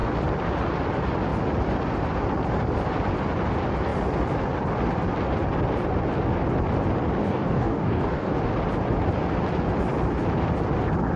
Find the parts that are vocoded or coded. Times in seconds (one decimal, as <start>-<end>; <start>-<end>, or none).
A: 7.2-8.4